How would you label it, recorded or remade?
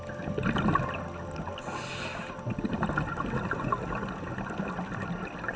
recorded